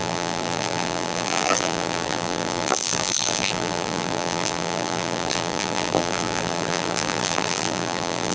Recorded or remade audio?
remade